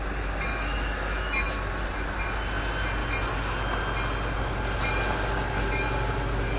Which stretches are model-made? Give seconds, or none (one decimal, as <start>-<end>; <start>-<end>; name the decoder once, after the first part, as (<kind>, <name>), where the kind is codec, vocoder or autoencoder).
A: 0.5-1.7 (autoencoder, DAC-VAE)